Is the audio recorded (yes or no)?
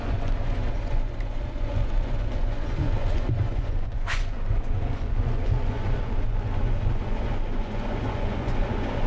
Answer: no